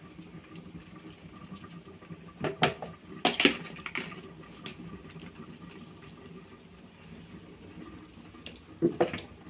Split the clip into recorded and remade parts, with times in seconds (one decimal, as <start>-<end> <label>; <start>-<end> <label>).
0.0-9.5 recorded

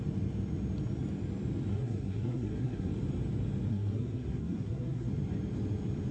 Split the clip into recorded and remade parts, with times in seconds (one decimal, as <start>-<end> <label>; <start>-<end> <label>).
0.0-1.7 recorded; 1.7-2.9 remade; 2.9-3.7 recorded; 3.7-5.1 remade; 5.1-6.1 recorded